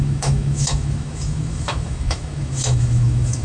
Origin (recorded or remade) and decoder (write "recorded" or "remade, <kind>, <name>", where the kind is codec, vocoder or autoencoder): remade, autoencoder, DAC-VAE